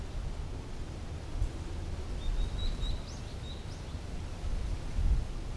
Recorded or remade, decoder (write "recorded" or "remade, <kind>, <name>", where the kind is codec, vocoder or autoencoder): recorded